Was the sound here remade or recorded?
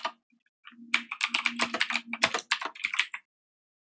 recorded